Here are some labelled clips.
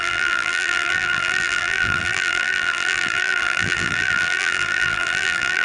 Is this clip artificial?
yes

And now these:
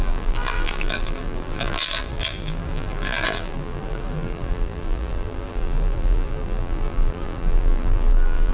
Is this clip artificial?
yes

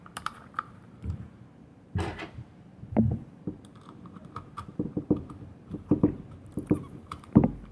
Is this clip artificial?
yes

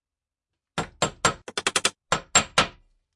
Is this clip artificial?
no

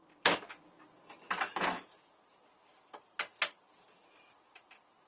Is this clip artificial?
no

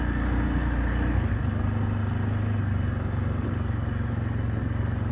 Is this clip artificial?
no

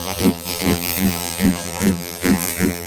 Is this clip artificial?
yes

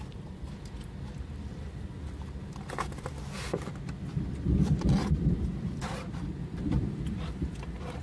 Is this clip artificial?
yes